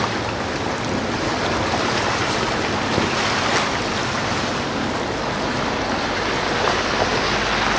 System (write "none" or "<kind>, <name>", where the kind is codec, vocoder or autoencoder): none